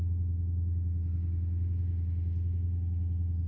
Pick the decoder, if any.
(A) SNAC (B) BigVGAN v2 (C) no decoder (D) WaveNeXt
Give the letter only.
C